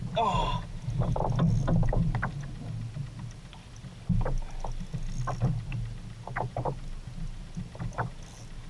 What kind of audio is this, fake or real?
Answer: real